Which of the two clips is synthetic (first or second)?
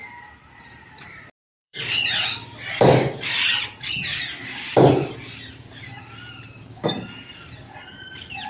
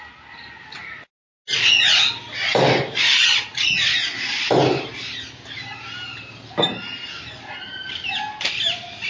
first